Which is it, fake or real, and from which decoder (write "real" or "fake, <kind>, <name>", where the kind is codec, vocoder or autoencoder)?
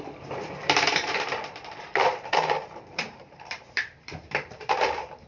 fake, vocoder, BigVGAN v2